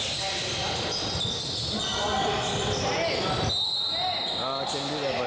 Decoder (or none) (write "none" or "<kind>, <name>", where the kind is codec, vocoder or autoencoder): none